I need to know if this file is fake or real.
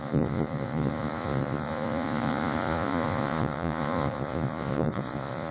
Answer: fake